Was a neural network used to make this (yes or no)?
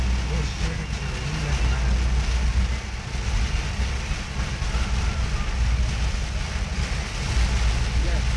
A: no